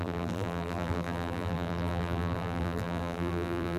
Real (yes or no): no